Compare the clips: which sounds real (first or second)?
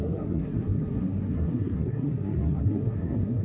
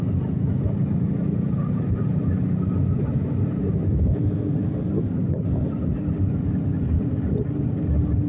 second